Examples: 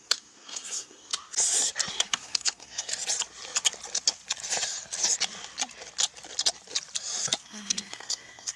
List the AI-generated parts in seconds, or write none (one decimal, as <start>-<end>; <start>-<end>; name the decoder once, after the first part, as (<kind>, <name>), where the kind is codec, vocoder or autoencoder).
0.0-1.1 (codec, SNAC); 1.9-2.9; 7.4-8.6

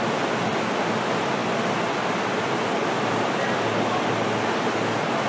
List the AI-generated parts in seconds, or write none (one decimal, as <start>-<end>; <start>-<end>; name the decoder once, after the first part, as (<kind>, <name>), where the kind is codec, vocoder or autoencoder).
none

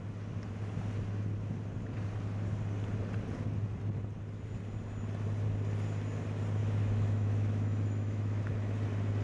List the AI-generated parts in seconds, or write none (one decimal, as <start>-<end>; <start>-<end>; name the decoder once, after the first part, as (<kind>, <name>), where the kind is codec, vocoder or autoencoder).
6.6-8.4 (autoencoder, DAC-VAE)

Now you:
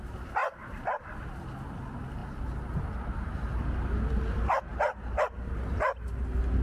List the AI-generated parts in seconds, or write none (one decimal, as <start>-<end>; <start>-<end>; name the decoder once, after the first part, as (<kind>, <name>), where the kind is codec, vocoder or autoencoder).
4.7-5.2 (vocoder, BigVGAN v2)

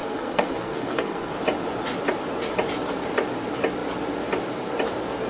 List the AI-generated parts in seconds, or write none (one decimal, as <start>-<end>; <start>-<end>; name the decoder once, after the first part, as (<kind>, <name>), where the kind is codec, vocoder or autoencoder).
0.0-1.3 (codec, SNAC)

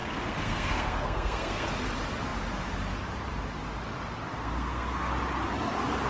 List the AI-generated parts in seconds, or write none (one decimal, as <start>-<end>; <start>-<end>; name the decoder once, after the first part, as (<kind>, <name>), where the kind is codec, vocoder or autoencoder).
0.0-1.7 (codec, SNAC); 4.3-5.1